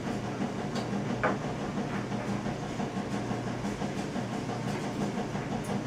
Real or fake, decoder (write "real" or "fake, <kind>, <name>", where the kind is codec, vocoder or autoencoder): real